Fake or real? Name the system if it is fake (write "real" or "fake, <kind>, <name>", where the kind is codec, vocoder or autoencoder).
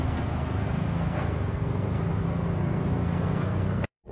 fake, codec, SNAC